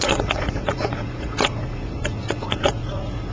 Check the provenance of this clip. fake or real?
fake